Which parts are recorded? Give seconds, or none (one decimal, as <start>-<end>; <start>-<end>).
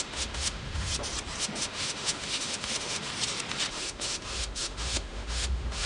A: 0.9-1.4; 3.1-3.7